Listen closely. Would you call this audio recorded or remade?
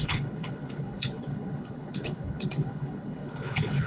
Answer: remade